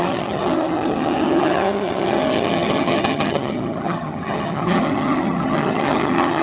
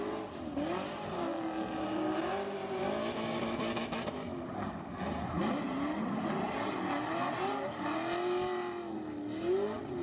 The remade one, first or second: first